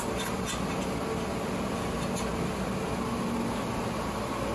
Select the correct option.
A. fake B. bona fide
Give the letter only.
B